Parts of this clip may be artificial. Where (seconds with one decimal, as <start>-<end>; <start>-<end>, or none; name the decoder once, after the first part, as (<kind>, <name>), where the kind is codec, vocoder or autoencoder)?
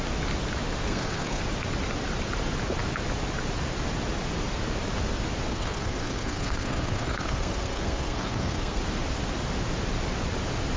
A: 0.8-1.4 (codec, SNAC); 5.5-8.8